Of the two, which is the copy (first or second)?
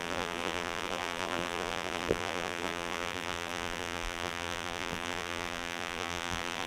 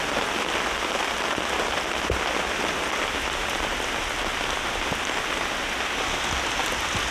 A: first